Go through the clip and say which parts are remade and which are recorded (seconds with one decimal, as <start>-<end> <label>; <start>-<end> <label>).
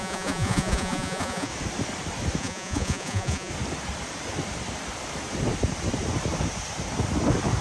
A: 0.0-1.5 remade; 1.5-2.4 recorded; 2.4-3.5 remade; 3.5-7.6 recorded